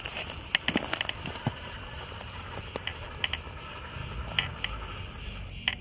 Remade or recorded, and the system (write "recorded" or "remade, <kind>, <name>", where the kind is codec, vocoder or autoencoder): recorded